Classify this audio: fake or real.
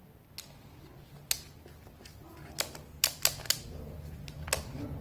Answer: real